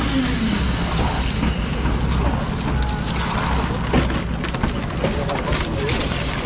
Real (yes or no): yes